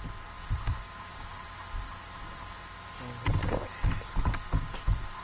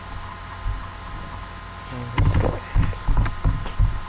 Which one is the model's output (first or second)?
first